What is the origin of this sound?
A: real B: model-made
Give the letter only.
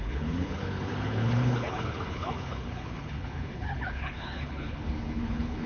B